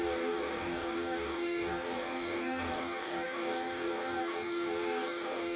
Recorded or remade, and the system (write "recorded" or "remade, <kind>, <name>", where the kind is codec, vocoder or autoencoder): remade, codec, DAC